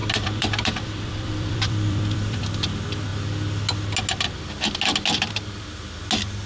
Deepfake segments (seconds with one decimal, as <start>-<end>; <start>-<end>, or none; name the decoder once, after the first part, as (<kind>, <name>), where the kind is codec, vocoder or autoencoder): 0.0-2.4 (vocoder, BigVGAN v2)